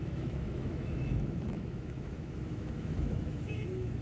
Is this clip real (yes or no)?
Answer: no